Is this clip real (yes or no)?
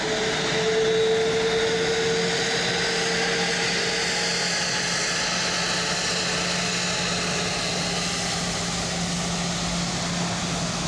yes